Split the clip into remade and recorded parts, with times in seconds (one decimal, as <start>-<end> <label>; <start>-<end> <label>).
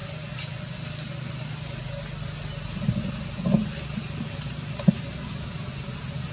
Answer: 0.0-6.3 recorded